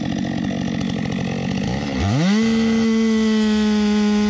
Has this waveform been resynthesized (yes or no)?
no